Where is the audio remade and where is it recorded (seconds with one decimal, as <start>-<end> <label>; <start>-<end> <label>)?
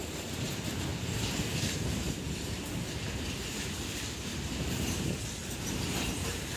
0.0-6.6 remade